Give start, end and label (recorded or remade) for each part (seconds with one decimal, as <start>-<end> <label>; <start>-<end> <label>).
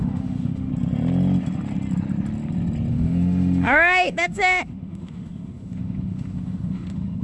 0.0-0.7 remade; 0.7-2.9 recorded; 2.9-7.2 remade